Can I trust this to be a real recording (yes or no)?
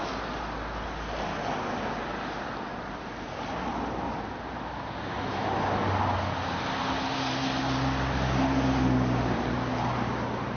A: yes